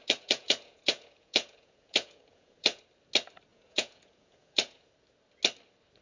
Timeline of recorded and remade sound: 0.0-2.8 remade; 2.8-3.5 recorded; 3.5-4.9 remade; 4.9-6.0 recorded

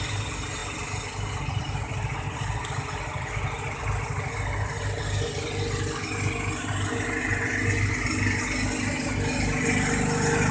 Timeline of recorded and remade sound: 0.0-10.5 recorded

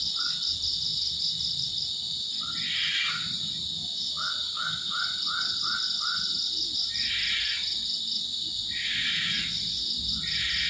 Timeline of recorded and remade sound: 0.0-10.7 recorded

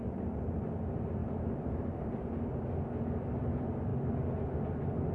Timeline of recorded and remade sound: 0.0-5.1 recorded

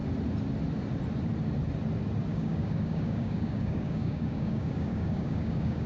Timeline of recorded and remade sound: 0.0-2.3 recorded; 2.3-5.9 remade

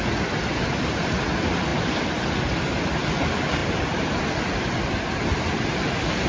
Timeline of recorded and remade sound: 0.0-1.7 recorded; 1.7-2.2 remade; 2.2-6.3 recorded

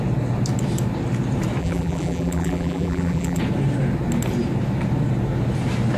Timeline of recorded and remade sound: 0.0-1.6 recorded; 1.6-3.4 remade; 3.4-6.0 recorded

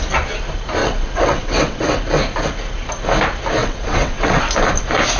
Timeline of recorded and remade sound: 0.0-0.8 recorded; 0.8-2.0 remade; 2.0-3.6 recorded; 3.6-4.4 remade; 4.4-5.2 recorded